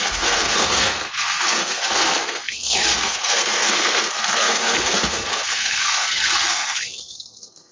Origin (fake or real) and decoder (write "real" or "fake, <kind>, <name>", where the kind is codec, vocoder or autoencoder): fake, codec, SNAC